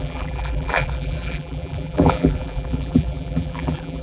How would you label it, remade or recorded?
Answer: remade